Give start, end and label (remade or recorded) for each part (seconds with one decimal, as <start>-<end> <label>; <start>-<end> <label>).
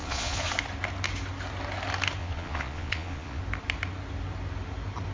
0.0-0.5 remade; 0.5-2.2 recorded; 2.2-3.4 remade; 3.4-5.1 recorded